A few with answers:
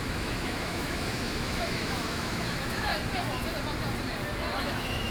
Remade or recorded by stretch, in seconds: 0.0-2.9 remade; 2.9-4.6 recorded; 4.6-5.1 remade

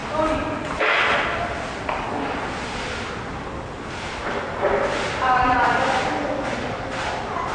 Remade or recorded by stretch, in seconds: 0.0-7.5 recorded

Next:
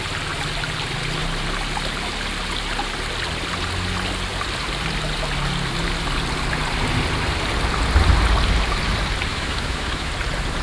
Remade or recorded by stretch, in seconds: 0.0-9.3 recorded; 9.3-10.1 remade; 10.1-10.6 recorded

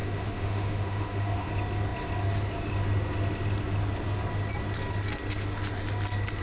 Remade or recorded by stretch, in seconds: 0.0-1.5 remade; 1.5-6.4 recorded

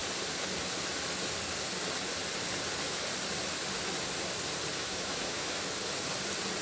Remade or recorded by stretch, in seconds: 0.0-4.8 recorded; 4.8-5.6 remade; 5.6-6.6 recorded

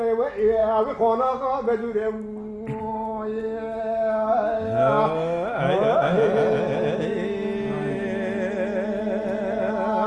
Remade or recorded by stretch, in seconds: 0.0-10.1 recorded

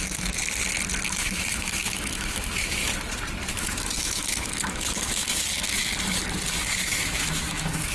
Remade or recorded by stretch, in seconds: 0.0-0.4 remade; 0.4-1.1 recorded; 1.1-2.8 remade; 2.8-3.5 recorded; 3.5-5.8 remade; 5.8-6.6 recorded; 6.6-7.9 remade

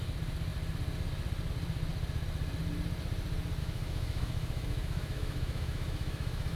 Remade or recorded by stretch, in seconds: 0.0-3.6 recorded; 3.6-6.6 remade